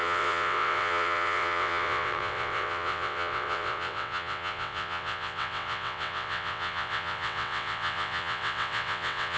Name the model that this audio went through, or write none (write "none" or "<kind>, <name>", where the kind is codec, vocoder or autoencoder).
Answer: vocoder, WaveNeXt